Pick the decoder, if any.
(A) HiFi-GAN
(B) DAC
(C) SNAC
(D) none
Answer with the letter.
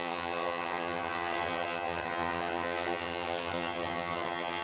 A